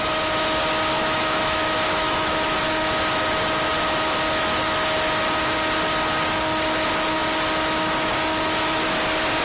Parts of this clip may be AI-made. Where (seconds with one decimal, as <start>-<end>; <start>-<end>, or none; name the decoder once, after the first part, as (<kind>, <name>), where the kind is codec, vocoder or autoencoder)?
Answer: 1.0-2.6 (autoencoder, DAC-VAE)